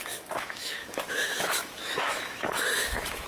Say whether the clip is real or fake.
fake